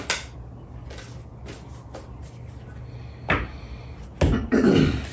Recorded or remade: recorded